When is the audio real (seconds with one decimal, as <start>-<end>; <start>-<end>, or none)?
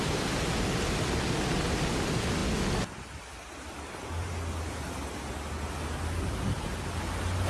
0.0-7.5